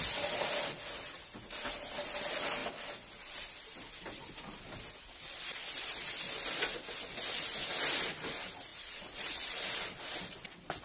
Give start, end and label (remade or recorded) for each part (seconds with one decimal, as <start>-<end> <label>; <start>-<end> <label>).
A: 0.0-8.7 recorded; 8.7-9.6 remade; 9.6-10.8 recorded